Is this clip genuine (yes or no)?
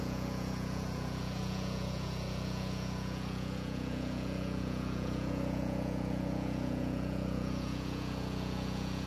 no